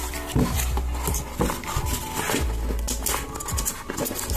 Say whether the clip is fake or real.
real